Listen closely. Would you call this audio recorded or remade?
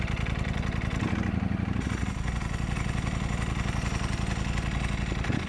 recorded